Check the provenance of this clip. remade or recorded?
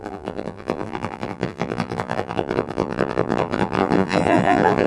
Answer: remade